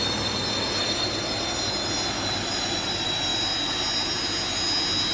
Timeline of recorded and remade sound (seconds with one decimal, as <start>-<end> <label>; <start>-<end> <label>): 0.0-5.1 recorded

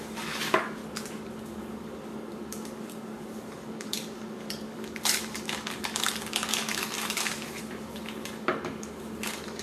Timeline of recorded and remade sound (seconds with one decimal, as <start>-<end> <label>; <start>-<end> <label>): 0.0-0.8 remade; 0.8-1.3 recorded; 1.3-9.6 remade

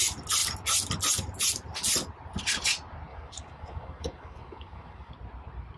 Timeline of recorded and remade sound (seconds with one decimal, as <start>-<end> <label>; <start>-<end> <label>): 0.0-3.1 recorded; 3.1-5.1 remade; 5.1-5.8 recorded

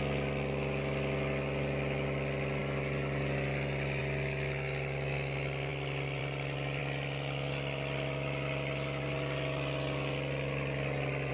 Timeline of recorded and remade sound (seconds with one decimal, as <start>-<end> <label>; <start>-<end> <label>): 0.0-11.3 recorded

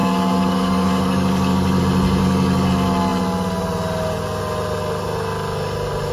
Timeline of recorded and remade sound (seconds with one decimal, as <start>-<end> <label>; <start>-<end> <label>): 0.0-1.8 remade; 1.8-2.2 recorded; 2.2-2.7 remade; 2.7-6.1 recorded